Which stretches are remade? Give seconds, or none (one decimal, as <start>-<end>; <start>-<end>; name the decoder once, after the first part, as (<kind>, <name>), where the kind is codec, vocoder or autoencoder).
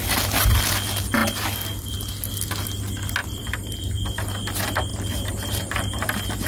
3.2-3.9 (vocoder, BigVGAN v2); 4.9-6.5